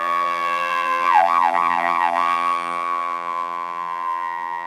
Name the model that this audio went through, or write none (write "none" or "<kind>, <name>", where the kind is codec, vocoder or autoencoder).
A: vocoder, BigVGAN v2